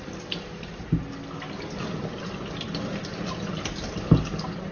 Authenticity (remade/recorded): recorded